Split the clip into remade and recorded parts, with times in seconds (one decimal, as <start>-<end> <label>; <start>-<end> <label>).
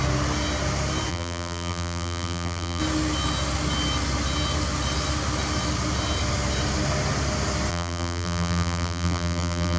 0.0-1.1 recorded; 1.1-2.8 remade; 2.8-7.7 recorded; 7.7-9.8 remade